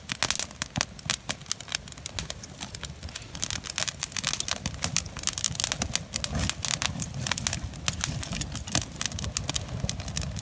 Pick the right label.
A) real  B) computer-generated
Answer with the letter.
A